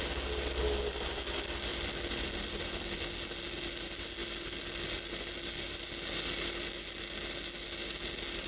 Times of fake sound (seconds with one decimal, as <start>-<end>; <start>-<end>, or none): none